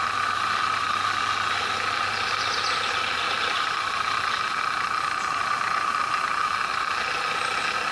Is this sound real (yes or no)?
yes